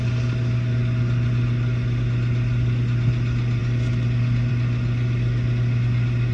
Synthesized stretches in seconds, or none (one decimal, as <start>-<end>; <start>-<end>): none